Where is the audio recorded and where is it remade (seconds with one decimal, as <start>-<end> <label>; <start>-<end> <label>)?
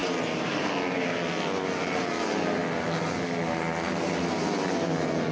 0.0-0.7 remade; 0.7-5.3 recorded